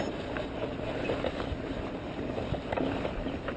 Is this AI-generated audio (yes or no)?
no